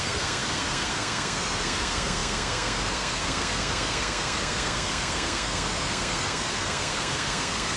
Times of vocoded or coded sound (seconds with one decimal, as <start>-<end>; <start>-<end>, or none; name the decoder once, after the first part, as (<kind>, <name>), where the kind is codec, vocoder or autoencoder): 0.0-7.8 (codec, SNAC)

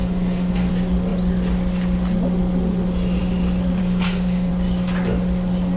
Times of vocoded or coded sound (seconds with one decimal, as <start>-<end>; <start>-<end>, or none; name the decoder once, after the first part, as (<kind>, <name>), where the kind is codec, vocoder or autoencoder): 0.0-0.7 (codec, SNAC); 3.8-4.5

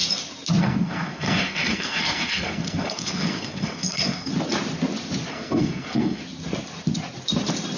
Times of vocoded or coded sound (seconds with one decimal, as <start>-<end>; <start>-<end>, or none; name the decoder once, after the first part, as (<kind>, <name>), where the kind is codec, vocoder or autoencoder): 0.6-4.3 (codec, SNAC); 5.3-6.2

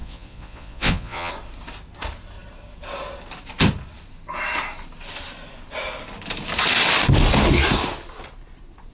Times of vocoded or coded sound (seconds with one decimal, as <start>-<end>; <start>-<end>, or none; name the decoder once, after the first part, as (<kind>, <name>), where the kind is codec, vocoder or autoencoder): 0.0-1.3 (vocoder, Vocos)

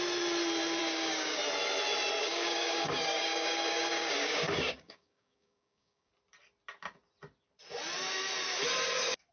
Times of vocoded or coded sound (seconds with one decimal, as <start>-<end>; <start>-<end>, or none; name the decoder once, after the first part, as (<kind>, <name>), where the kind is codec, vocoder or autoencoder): 0.8-1.4 (codec, DAC); 2.2-6.1

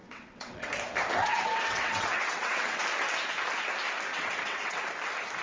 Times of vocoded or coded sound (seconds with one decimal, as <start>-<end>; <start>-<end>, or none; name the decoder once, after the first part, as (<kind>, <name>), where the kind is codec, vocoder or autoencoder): 0.0-0.7 (vocoder, WaveNeXt); 1.2-2.8; 4.1-4.8

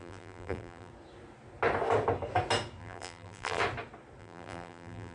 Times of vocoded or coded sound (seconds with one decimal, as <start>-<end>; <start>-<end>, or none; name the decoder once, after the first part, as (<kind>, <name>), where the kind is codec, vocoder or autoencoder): 0.0-0.9 (vocoder, BigVGAN v2); 2.8-3.6; 4.2-5.1

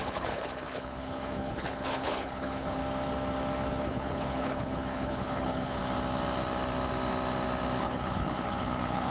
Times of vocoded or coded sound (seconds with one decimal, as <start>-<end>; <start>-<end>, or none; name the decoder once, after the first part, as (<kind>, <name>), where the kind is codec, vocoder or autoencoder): 0.0-2.8 (codec, HILCodec); 3.8-5.8; 7.8-9.1